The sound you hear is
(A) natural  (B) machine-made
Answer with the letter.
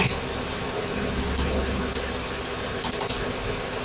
A